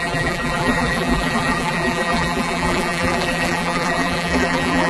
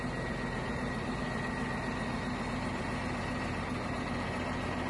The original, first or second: second